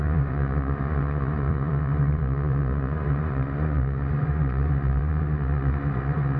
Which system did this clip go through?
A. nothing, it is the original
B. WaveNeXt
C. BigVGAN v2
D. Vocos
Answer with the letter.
D